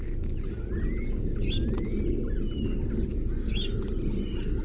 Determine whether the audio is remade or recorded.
recorded